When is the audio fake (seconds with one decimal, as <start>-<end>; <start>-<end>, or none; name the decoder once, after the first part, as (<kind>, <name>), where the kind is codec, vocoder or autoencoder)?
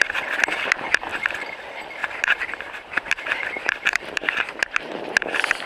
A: 1.1-1.6 (vocoder, BigVGAN v2); 2.0-5.1